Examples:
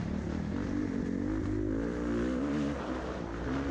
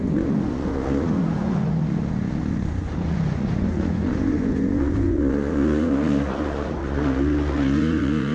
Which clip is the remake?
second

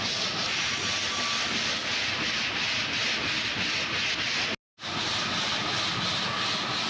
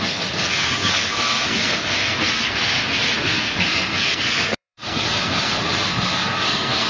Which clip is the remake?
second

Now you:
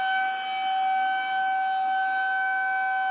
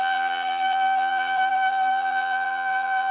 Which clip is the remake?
second